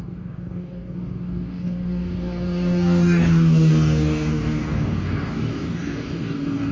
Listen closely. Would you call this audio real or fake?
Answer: fake